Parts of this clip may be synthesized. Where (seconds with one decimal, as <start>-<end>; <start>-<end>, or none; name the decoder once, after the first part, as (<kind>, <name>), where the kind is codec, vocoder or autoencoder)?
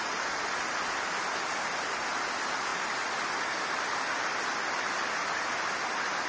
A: none